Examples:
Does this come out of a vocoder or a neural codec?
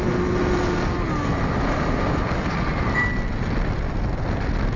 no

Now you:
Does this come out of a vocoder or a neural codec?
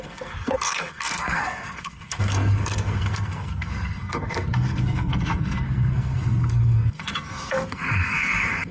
yes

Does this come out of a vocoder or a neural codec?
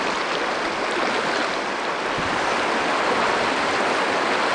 no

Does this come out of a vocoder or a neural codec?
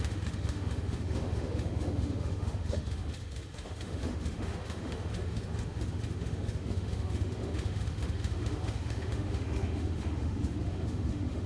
yes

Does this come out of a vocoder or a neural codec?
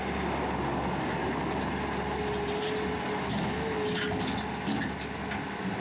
no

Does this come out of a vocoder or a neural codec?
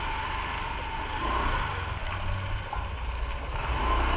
no